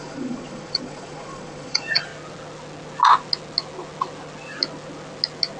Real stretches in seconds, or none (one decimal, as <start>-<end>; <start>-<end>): 2.1-5.6